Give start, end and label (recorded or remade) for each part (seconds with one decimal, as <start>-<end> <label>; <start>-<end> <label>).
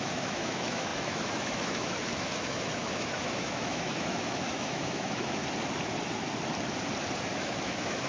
0.0-5.4 remade; 5.4-7.3 recorded; 7.3-8.1 remade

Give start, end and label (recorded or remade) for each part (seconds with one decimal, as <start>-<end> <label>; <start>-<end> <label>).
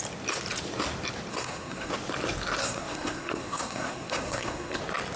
0.0-1.3 recorded; 1.3-1.9 remade; 1.9-2.6 recorded; 2.6-4.8 remade; 4.8-5.2 recorded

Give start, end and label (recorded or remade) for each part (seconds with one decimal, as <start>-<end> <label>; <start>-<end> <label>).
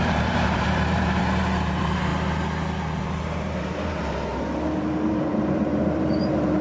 0.0-2.1 remade; 2.1-3.0 recorded; 3.0-4.3 remade; 4.3-5.1 recorded; 5.1-6.6 remade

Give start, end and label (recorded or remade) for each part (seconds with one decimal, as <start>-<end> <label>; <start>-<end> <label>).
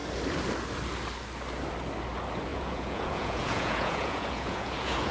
0.0-2.5 recorded; 2.5-5.1 remade